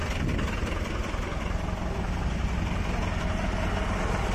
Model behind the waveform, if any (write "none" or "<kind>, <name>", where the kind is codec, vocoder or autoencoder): none